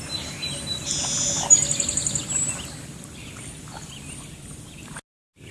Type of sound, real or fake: real